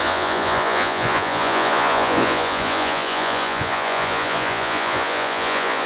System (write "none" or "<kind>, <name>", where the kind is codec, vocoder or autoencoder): vocoder, Vocos